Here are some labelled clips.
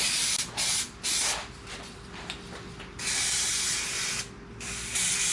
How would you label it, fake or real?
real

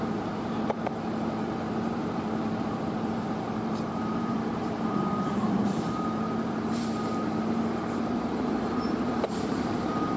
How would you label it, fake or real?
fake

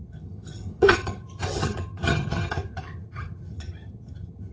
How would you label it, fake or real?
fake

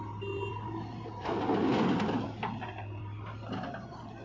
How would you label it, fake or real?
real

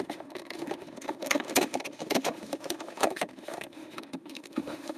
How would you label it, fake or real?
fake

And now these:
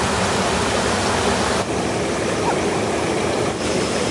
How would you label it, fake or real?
real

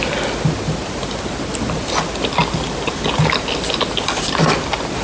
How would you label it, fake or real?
real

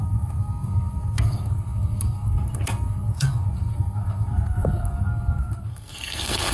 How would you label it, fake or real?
fake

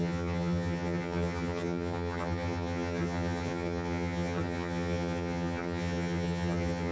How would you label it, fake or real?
fake